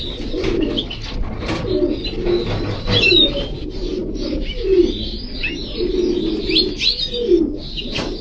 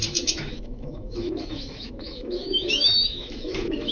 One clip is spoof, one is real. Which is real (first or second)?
first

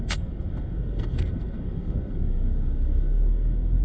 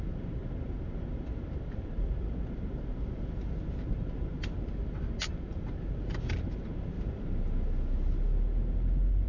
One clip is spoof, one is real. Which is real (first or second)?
second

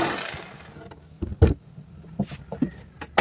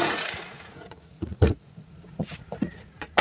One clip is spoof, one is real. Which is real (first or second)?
first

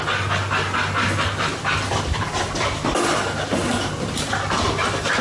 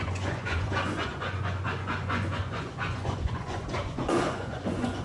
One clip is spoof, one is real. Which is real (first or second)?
first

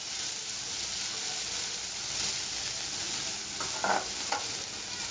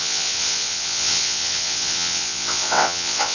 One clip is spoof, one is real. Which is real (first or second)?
first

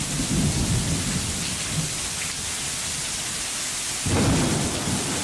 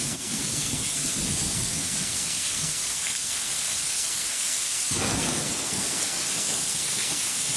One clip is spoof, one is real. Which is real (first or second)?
first